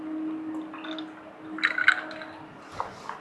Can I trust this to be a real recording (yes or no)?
yes